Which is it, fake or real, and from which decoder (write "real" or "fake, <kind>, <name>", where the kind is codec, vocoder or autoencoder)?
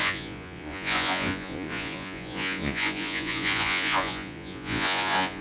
fake, vocoder, Vocos